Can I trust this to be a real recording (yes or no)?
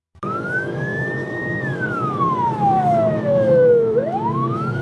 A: no